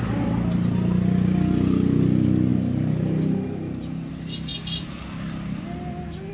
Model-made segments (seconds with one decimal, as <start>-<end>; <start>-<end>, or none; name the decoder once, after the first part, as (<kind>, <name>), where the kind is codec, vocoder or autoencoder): none